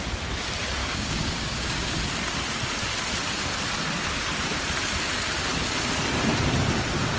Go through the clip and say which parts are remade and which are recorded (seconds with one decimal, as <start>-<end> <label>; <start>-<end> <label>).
0.0-0.8 recorded; 0.8-2.0 remade; 2.0-7.2 recorded